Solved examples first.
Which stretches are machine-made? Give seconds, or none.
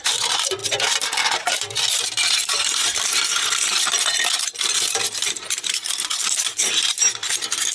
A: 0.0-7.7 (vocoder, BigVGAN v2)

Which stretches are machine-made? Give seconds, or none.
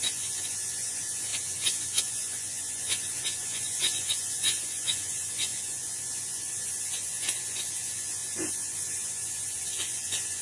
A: 0.0-10.4 (vocoder, Vocos)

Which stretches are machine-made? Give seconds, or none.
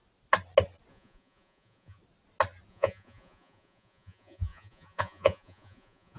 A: 0.9-2.0 (vocoder, Vocos); 2.7-6.2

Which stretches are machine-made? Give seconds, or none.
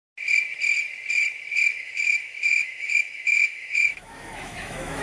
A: 1.7-5.0 (autoencoder, DAC-VAE)